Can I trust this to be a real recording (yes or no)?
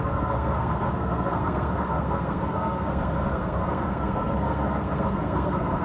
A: no